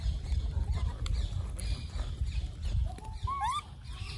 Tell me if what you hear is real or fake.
real